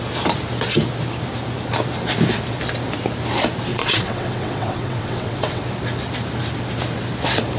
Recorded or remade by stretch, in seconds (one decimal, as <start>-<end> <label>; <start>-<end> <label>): 0.0-3.7 recorded; 3.7-5.6 remade; 5.6-7.6 recorded